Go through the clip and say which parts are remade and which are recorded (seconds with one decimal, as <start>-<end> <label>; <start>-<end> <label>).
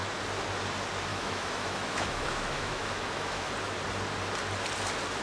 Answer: 0.0-1.1 recorded; 1.1-3.5 remade; 3.5-5.2 recorded